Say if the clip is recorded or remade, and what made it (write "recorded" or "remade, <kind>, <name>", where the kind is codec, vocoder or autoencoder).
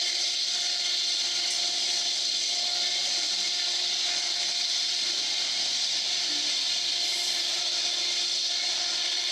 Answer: recorded